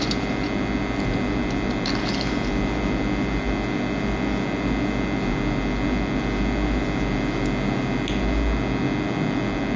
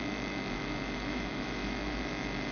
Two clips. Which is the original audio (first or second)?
first